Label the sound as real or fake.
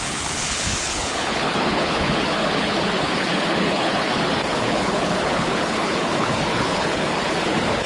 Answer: fake